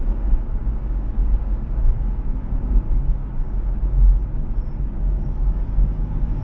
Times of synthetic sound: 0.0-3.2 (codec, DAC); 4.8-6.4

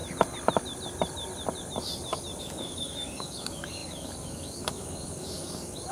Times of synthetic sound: 2.4-5.9 (codec, DAC)

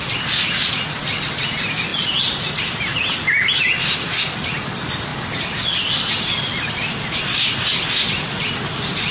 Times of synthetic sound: none

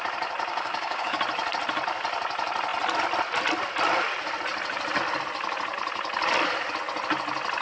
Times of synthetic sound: 0.5-1.2 (codec, DAC)

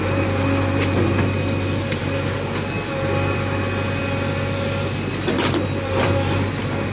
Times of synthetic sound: none

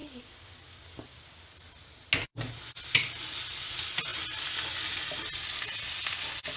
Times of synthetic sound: 0.0-1.5 (codec, DAC)

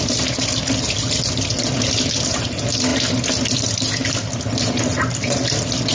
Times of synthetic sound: none

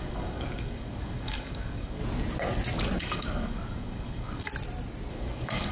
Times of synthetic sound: 0.0-2.0 (codec, DAC); 3.0-4.5; 5.1-5.7